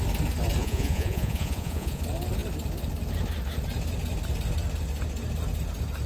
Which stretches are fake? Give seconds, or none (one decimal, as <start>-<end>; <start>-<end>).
0.6-2.0